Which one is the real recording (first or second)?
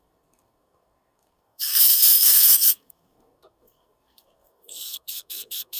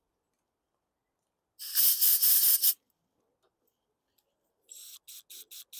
second